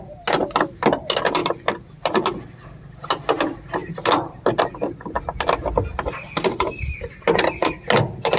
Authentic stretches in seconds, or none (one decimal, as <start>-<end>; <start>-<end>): 0.0-8.4